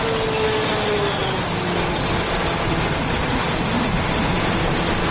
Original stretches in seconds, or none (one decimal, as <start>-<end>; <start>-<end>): 0.0-5.1